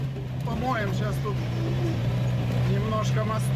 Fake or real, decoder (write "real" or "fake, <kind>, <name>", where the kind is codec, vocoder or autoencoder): real